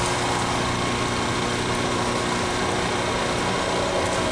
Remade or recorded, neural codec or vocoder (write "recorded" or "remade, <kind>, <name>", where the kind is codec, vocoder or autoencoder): recorded